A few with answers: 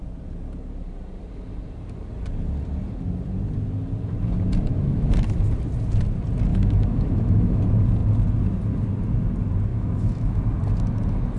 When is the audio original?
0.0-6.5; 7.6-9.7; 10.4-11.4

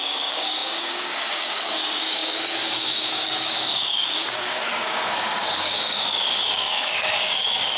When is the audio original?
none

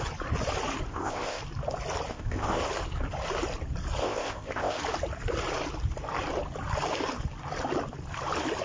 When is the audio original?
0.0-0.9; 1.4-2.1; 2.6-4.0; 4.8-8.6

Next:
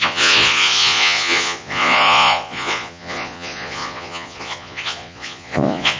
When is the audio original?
none